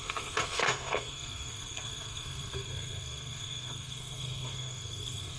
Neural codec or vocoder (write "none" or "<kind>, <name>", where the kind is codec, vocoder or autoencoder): codec, SNAC